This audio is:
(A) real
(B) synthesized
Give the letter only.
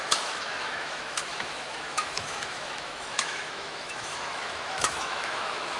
B